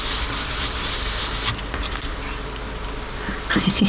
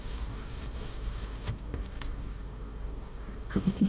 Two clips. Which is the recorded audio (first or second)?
first